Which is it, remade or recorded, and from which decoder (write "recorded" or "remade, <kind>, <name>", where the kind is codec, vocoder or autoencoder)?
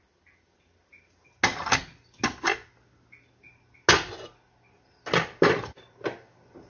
recorded